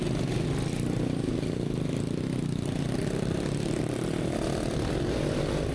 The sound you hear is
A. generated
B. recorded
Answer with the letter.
B